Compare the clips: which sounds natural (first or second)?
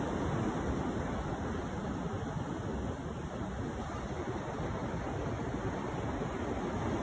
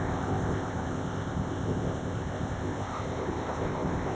first